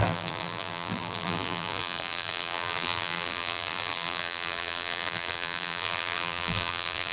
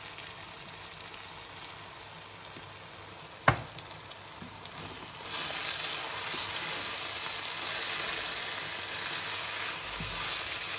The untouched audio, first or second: second